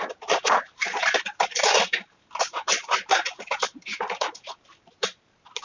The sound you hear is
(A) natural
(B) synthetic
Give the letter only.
B